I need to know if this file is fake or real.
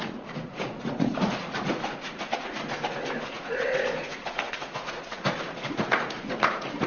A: fake